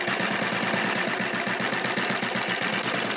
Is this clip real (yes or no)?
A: yes